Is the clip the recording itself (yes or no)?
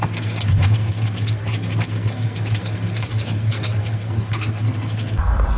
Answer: no